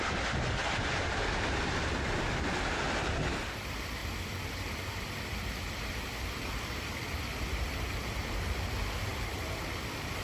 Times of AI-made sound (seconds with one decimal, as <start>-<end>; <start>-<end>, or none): 0.6-1.2; 4.0-8.6; 9.1-10.2